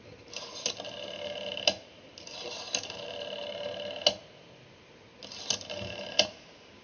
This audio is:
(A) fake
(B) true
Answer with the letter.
B